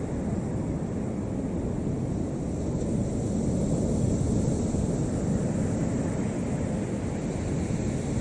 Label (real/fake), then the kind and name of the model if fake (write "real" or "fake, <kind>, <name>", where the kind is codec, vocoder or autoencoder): real